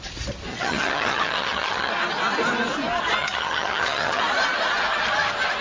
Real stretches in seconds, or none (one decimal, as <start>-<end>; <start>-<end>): 0.0-0.5; 1.9-3.2; 4.2-5.6